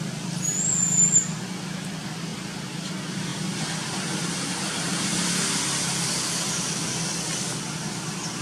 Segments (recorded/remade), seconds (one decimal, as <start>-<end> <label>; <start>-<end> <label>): 0.0-2.3 recorded; 2.3-2.9 remade; 2.9-8.4 recorded